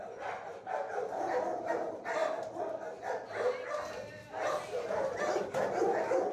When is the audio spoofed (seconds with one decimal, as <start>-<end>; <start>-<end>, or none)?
none